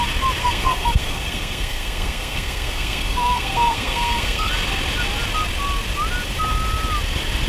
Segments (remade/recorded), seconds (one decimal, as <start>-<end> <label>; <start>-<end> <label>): 0.0-0.4 recorded; 0.4-4.5 remade; 4.5-7.5 recorded